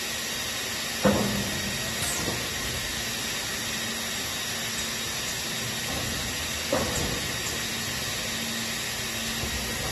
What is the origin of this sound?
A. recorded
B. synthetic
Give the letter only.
A